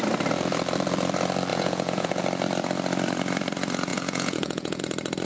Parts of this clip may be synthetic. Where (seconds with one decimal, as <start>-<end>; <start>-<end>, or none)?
1.5-2.2; 3.9-4.8